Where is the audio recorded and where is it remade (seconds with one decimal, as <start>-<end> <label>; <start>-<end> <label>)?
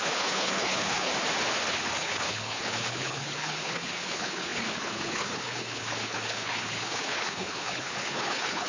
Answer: 0.0-1.1 remade; 1.1-1.7 recorded; 1.7-8.7 remade